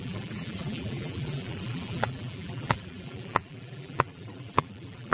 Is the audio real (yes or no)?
no